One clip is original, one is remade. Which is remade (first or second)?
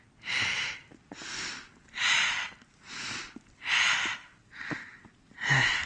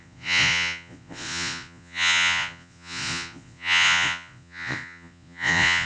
second